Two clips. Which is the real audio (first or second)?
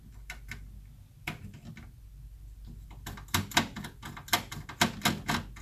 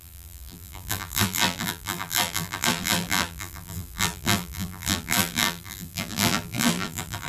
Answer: first